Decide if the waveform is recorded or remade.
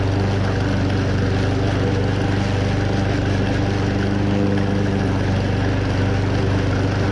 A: recorded